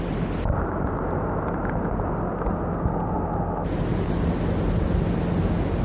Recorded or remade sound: recorded